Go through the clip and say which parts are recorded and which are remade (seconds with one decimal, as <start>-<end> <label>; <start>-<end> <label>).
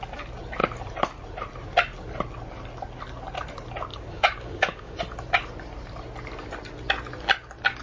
0.0-3.9 recorded; 3.9-5.0 remade; 5.0-7.8 recorded